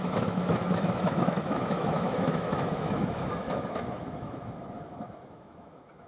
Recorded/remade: remade